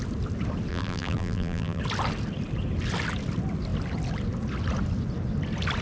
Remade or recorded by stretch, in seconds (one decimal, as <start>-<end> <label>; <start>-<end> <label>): 0.0-0.7 recorded; 0.7-1.8 remade; 1.8-5.8 recorded